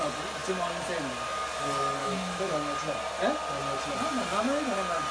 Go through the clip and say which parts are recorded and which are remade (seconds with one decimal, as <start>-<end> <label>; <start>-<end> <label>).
0.0-2.0 recorded; 2.0-2.5 remade; 2.5-5.1 recorded